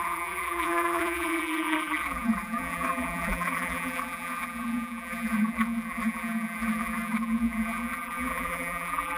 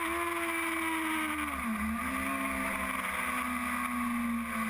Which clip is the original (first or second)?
second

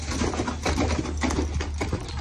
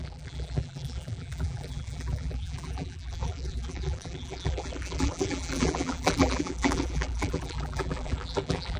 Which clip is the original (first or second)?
first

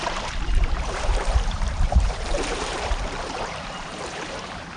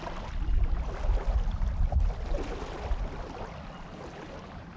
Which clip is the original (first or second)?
second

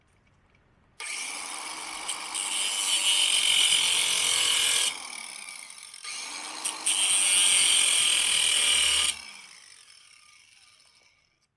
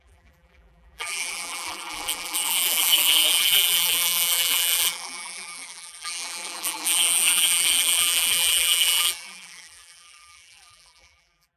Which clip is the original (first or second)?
first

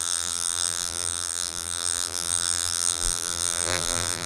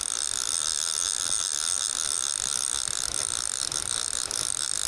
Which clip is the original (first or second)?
second